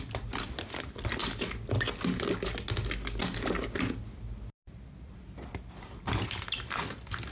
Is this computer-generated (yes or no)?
no